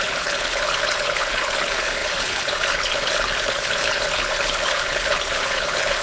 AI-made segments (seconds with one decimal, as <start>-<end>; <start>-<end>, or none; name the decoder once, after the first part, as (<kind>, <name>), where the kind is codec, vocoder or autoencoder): 0.0-6.0 (codec, HILCodec)